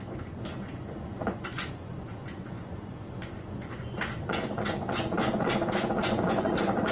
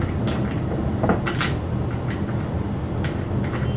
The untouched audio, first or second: second